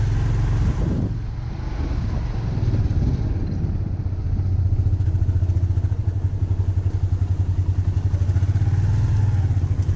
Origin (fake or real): real